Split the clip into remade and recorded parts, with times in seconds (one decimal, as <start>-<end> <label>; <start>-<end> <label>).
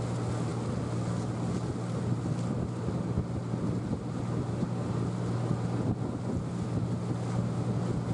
0.0-8.1 recorded